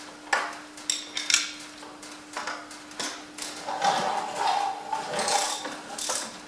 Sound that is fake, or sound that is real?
real